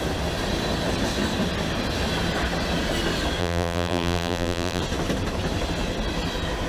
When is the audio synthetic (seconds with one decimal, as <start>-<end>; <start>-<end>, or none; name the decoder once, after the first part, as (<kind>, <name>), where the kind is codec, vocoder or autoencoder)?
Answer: 3.4-4.8 (vocoder, BigVGAN v2)